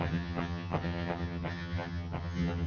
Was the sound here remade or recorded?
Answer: remade